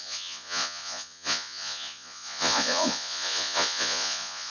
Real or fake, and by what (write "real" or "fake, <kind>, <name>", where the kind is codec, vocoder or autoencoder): fake, vocoder, Vocos